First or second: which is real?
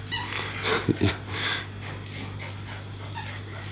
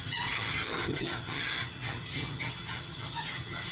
first